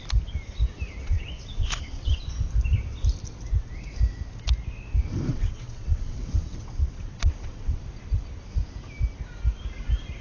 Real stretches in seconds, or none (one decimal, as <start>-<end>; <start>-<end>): 0.0-1.0; 2.2-5.3; 7.8-10.2

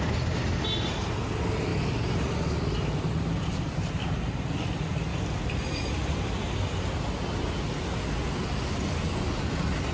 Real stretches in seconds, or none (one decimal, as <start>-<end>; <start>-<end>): 0.0-9.9

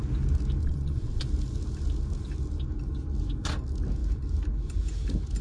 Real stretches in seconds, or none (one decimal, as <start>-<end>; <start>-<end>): 0.0-0.6; 1.2-5.4